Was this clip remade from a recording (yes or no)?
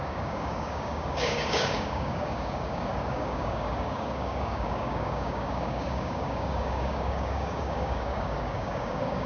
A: yes